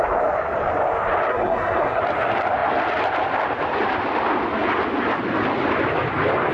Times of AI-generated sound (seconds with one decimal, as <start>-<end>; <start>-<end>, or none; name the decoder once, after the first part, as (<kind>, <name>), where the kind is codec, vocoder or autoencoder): 1.3-2.0 (codec, SNAC)